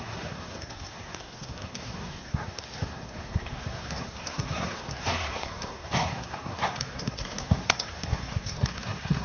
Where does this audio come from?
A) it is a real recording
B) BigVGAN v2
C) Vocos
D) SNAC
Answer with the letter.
D